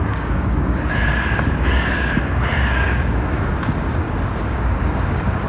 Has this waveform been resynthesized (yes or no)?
yes